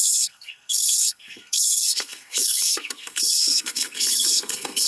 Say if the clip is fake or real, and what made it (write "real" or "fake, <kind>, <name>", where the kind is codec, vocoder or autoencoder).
fake, codec, SNAC